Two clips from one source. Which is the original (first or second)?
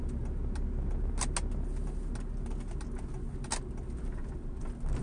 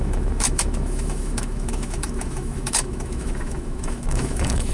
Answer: first